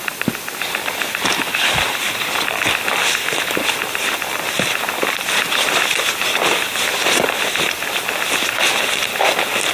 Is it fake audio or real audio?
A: fake